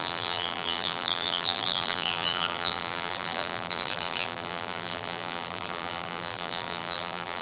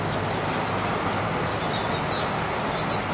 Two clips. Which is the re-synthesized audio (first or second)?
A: first